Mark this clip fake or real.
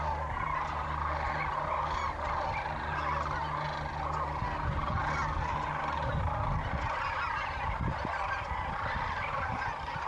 real